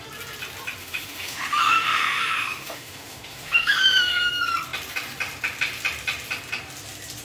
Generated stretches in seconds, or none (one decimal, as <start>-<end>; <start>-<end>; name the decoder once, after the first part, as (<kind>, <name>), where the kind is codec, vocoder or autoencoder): 0.8-4.3 (autoencoder, DAC-VAE)